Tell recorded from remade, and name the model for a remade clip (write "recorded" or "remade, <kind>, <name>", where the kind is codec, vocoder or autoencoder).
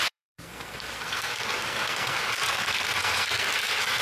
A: remade, codec, SNAC